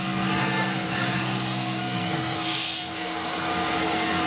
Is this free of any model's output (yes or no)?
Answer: no